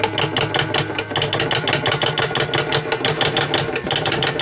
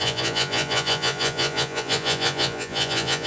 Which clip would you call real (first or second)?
first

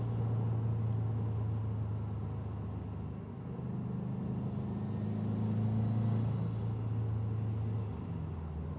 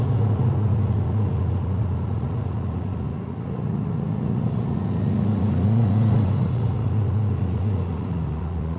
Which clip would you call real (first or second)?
first